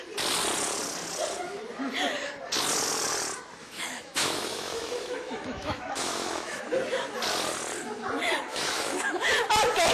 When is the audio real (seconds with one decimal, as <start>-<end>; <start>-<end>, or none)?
0.0-3.6; 6.6-8.5; 9.3-9.9